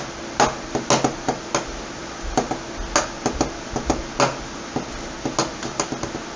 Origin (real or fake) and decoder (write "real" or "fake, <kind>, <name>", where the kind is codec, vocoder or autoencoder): real